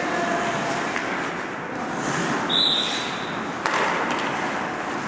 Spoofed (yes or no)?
no